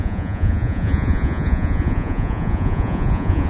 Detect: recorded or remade remade